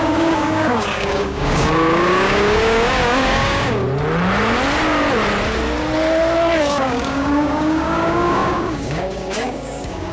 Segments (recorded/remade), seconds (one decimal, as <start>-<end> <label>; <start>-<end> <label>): 0.0-3.8 remade; 3.8-6.6 recorded; 6.6-10.1 remade